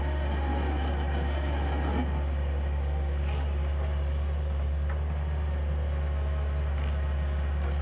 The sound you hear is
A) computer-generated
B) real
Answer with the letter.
B